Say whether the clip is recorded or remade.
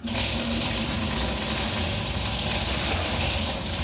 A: recorded